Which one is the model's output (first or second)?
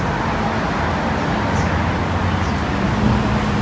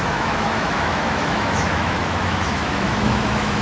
second